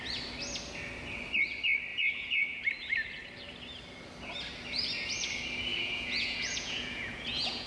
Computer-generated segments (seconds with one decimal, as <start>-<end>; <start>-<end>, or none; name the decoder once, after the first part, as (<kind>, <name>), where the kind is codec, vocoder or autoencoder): 1.9-2.6 (vocoder, Vocos); 5.7-7.7